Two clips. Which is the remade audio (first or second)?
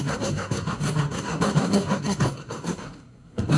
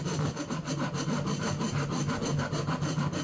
first